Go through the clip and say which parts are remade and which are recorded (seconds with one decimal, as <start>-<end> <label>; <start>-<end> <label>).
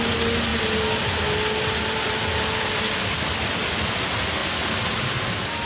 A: 0.0-5.7 recorded